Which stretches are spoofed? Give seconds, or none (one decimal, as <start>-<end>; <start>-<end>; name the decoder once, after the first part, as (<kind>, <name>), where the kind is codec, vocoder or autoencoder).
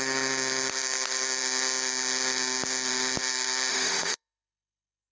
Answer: 3.7-5.1 (autoencoder, DAC-VAE)